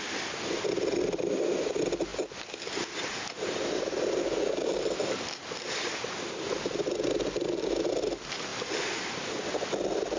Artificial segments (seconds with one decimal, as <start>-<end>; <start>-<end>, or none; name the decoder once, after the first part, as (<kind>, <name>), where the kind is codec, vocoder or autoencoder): none